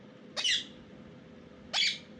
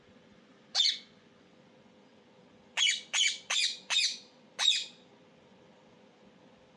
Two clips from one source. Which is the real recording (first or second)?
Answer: first